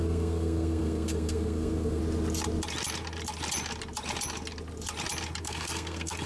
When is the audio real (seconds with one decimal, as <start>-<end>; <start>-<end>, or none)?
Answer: 2.0-5.4